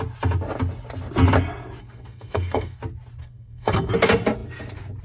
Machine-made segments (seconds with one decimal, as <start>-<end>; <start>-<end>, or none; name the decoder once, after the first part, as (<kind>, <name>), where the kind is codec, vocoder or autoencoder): 1.8-2.8 (codec, SNAC); 3.2-3.9